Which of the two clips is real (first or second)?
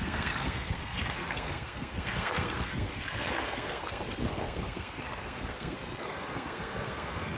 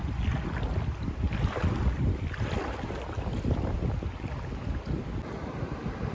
second